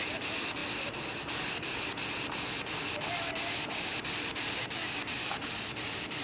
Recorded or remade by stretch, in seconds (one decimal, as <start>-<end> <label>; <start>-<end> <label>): 0.0-6.2 recorded